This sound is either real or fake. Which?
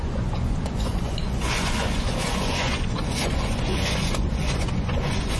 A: fake